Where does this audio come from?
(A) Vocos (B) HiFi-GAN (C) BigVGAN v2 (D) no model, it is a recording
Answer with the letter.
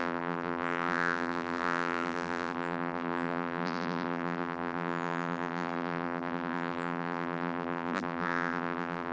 C